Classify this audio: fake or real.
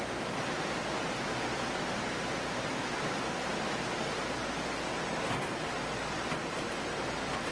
real